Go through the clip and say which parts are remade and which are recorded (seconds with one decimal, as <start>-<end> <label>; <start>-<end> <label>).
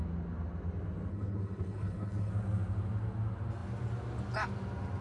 0.0-1.1 recorded; 1.1-2.3 remade; 2.3-5.0 recorded